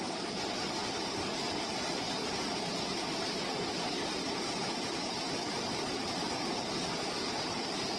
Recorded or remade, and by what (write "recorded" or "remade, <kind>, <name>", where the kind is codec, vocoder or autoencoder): recorded